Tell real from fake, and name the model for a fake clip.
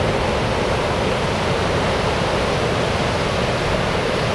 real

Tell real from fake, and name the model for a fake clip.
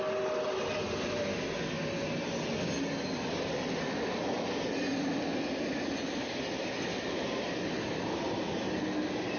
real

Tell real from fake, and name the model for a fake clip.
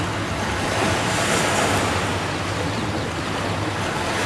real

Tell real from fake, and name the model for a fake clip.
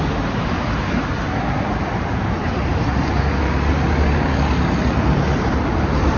real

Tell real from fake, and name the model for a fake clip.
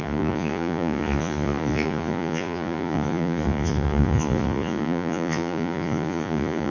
fake, vocoder, Vocos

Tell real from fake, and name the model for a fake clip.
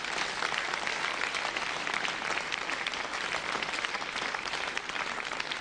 fake, vocoder, BigVGAN v2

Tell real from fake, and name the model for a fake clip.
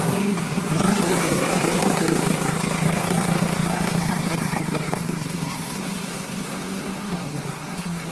fake, codec, SNAC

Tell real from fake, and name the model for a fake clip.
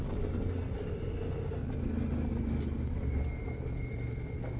real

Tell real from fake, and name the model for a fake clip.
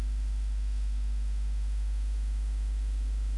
fake, autoencoder, DAC-VAE